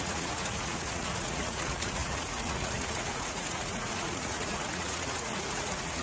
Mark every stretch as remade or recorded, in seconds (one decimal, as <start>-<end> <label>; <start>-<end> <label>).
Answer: 0.0-6.0 remade

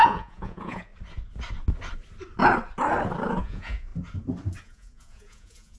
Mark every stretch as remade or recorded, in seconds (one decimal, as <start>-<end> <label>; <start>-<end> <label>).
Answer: 0.0-0.9 remade; 0.9-3.4 recorded; 3.4-3.9 remade; 3.9-4.6 recorded; 4.6-5.8 remade

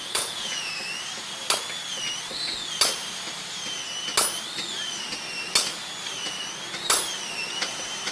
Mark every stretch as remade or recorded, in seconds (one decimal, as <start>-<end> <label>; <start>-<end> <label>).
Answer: 0.0-0.7 remade; 0.7-8.1 recorded

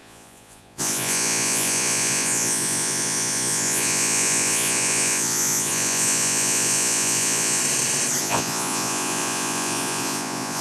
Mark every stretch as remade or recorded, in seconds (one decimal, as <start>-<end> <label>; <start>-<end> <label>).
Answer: 0.0-7.6 remade; 7.6-8.2 recorded; 8.2-10.6 remade

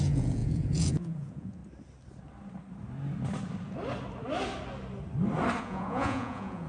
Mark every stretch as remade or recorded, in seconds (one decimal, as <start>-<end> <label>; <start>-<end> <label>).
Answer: 0.0-1.6 remade; 1.6-5.6 recorded; 5.6-6.7 remade

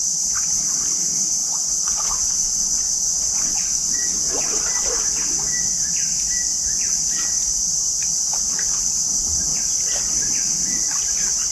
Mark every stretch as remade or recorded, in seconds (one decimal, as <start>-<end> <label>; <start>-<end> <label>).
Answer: 0.0-1.4 recorded; 1.4-4.6 remade; 4.6-11.5 recorded

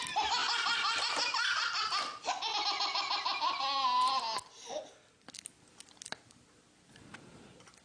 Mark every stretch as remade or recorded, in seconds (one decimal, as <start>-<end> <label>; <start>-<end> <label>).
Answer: 0.0-7.8 recorded

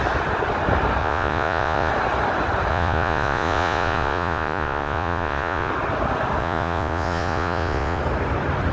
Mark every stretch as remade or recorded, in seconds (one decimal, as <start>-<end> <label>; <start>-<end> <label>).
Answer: 0.0-1.0 recorded; 1.0-1.9 remade; 1.9-2.7 recorded; 2.7-5.7 remade; 5.7-6.4 recorded; 6.4-8.0 remade; 8.0-8.7 recorded